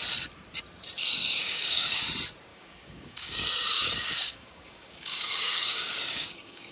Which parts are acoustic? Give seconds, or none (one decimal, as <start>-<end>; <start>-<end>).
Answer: 0.0-1.0; 2.0-2.5